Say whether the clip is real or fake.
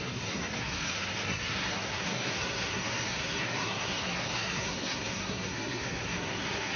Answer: fake